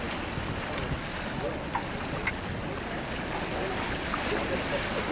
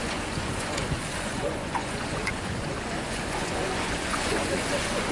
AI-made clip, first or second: second